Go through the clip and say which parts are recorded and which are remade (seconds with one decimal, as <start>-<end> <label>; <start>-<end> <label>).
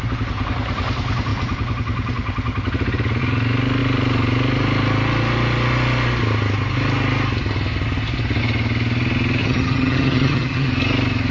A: 0.0-9.4 recorded; 9.4-10.7 remade; 10.7-11.3 recorded